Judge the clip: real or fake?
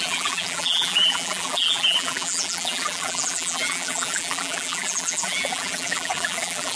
fake